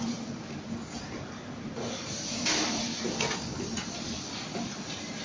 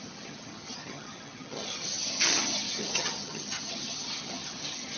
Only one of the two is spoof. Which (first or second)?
second